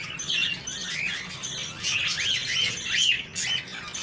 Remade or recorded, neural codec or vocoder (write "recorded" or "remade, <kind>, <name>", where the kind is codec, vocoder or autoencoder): recorded